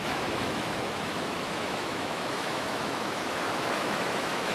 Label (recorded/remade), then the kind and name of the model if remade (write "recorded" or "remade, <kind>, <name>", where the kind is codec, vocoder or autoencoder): remade, autoencoder, DAC-VAE